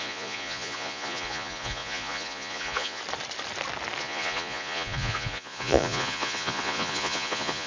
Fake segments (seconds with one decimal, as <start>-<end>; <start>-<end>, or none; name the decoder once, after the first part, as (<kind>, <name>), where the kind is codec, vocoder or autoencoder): 0.0-3.0 (vocoder, Vocos); 4.0-7.7